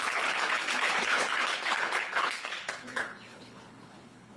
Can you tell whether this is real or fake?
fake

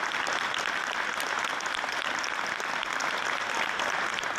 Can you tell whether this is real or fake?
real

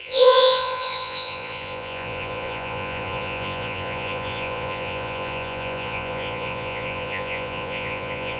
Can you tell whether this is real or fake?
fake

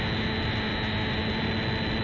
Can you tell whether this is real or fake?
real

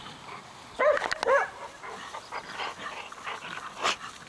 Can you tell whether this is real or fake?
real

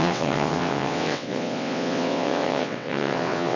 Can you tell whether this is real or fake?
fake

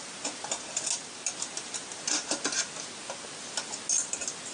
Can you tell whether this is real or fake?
real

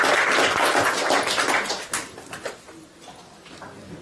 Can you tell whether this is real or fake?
real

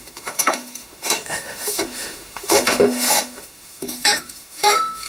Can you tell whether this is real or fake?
fake